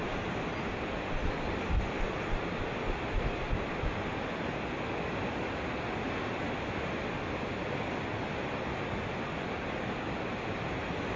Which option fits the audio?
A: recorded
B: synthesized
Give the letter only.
A